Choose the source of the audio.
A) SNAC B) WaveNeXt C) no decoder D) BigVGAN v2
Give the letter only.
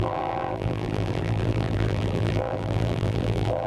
D